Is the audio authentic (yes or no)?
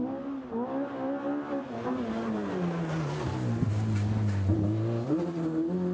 yes